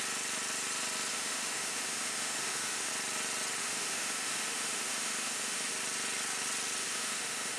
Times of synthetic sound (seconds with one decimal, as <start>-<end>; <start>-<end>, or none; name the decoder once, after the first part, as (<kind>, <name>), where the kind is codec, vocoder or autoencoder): 1.1-2.9 (autoencoder, DAC-VAE); 3.6-5.7; 6.8-7.6